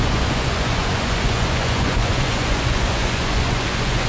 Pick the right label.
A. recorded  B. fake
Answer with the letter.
B